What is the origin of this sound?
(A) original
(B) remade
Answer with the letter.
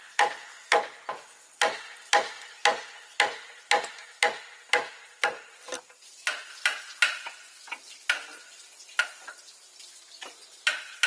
A